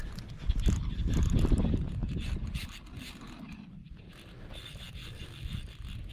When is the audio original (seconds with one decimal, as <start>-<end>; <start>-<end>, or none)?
0.0-2.0; 4.3-5.0